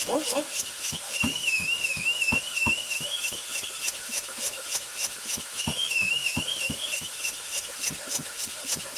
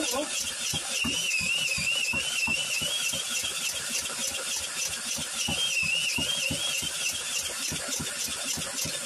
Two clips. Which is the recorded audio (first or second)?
second